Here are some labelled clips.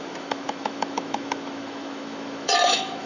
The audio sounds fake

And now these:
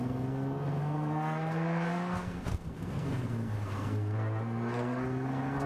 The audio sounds fake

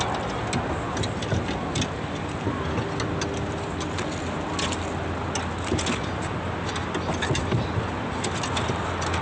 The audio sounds real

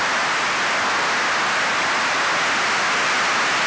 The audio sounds real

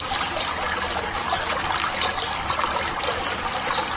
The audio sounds real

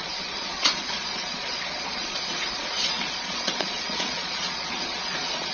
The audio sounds fake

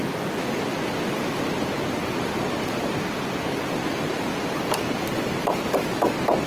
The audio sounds real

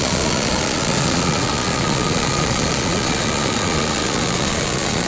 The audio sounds fake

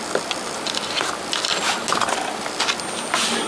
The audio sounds real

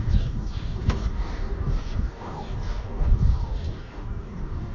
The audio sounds fake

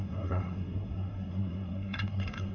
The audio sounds fake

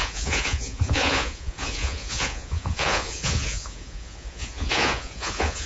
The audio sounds fake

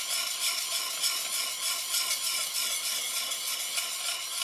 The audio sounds real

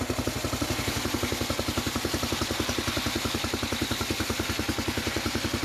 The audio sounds real